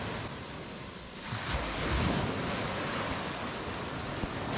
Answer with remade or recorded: recorded